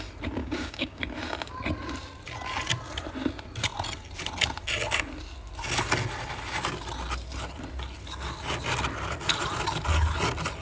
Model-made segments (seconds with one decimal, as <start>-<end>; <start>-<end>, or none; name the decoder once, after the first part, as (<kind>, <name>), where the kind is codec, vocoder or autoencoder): 0.4-1.0 (codec, DAC)

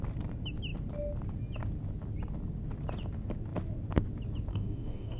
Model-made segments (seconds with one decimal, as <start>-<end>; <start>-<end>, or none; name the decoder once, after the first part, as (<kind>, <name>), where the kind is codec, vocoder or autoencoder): 4.5-5.2 (codec, DAC)

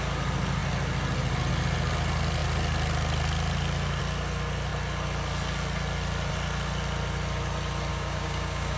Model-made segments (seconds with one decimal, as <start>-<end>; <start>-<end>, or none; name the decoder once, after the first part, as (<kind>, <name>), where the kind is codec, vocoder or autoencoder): 7.9-8.8 (codec, DAC)